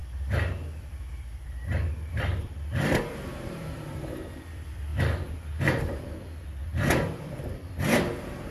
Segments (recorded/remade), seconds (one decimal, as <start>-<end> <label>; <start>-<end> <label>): 0.0-0.8 recorded; 0.8-8.5 remade

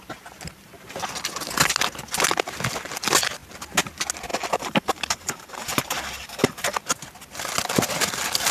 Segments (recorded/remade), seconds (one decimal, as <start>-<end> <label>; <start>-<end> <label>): 0.0-4.3 recorded; 4.3-6.8 remade; 6.8-8.5 recorded

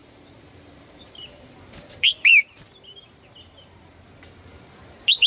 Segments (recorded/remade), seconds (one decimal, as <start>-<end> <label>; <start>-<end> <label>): 0.0-3.2 remade; 3.2-4.5 recorded; 4.5-5.3 remade

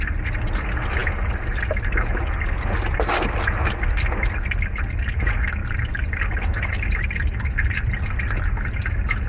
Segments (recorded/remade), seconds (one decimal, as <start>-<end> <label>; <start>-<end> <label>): 0.0-5.6 recorded; 5.6-7.3 remade; 7.3-9.3 recorded